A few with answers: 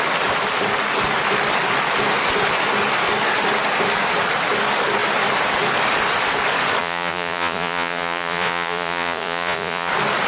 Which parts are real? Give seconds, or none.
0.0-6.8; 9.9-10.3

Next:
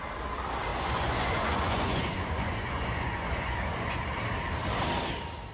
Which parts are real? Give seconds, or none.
0.0-0.7; 4.0-5.5

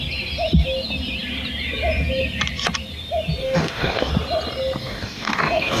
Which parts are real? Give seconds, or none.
0.0-3.4; 4.1-4.8

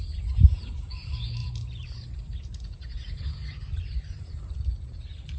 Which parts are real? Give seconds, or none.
0.0-1.4; 4.6-5.4

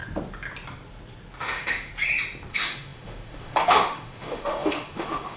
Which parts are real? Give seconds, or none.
0.0-1.4; 1.9-2.5

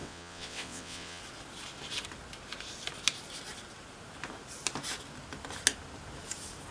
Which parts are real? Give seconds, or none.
1.2-6.7

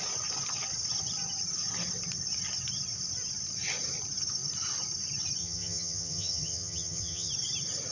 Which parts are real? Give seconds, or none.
0.0-5.4; 7.3-7.9

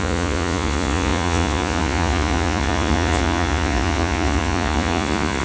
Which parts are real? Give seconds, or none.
none